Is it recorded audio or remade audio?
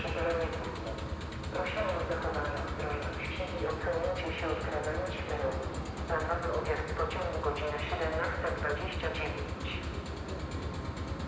recorded